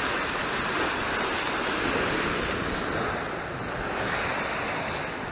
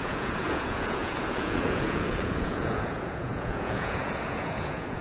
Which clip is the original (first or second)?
first